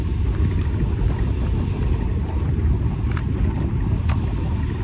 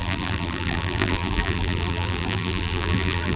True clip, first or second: first